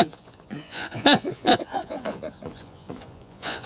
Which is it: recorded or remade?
remade